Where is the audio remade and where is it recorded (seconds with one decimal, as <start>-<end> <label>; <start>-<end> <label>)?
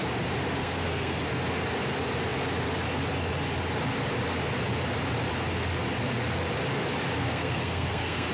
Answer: 0.0-0.6 recorded; 0.6-1.2 remade; 1.2-7.2 recorded; 7.2-8.3 remade